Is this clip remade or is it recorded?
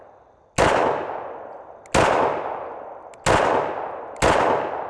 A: recorded